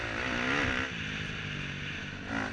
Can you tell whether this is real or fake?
real